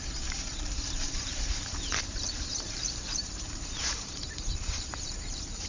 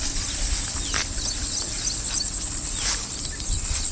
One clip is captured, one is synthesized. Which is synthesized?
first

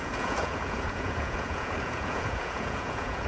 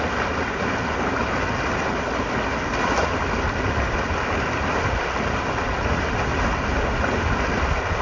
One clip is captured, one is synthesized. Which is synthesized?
first